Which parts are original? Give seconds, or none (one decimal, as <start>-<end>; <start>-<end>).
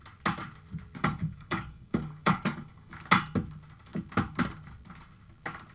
0.0-1.0; 3.0-5.7